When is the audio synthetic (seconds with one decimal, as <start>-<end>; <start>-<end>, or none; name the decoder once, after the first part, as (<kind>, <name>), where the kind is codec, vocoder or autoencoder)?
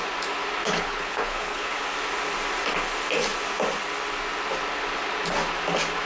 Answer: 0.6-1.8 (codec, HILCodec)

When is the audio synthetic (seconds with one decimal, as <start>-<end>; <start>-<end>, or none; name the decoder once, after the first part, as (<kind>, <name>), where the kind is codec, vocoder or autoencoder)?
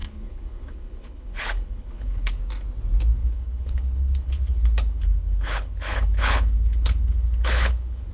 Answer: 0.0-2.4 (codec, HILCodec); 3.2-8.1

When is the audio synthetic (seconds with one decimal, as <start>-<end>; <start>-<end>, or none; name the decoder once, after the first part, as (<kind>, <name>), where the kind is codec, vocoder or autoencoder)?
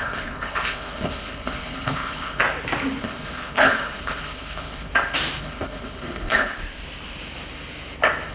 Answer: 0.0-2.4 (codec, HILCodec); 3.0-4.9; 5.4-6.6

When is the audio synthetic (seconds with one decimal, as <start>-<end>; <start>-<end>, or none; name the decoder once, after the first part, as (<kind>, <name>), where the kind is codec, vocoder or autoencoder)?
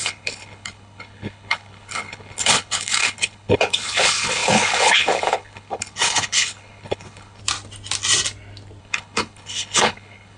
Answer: 0.0-7.4 (codec, HILCodec); 8.8-10.4